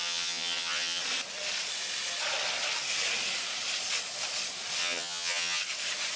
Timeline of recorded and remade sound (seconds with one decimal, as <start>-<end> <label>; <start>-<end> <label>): 0.0-1.0 remade; 1.0-4.8 recorded; 4.8-5.6 remade; 5.6-6.2 recorded